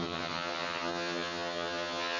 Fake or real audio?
fake